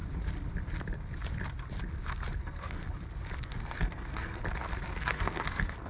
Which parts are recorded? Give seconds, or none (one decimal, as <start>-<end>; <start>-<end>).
0.0-2.4; 2.8-3.4; 4.4-5.0